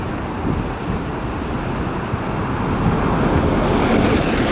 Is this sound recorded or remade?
recorded